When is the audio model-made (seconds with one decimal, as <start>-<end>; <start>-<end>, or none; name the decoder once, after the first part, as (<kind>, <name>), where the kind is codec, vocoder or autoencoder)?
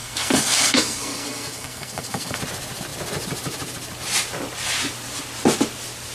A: 0.0-2.4 (codec, SNAC)